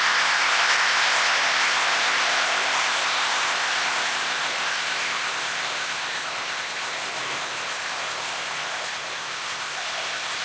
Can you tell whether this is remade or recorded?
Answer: remade